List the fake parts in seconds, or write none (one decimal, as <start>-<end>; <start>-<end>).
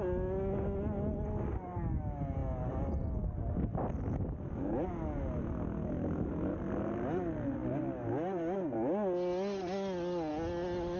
none